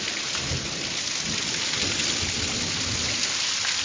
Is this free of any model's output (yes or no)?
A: yes